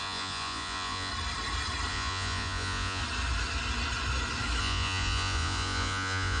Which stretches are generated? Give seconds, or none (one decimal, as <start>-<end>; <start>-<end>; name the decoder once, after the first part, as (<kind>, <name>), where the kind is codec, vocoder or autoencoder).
0.0-1.1 (vocoder, Vocos); 1.9-3.0; 4.6-6.4